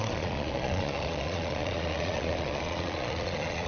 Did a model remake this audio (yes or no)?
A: yes